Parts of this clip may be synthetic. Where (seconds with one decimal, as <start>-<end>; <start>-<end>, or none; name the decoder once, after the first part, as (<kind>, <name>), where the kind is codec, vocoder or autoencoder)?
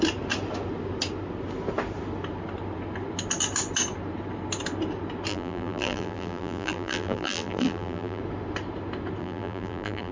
5.3-8.2 (vocoder, BigVGAN v2); 9.2-10.1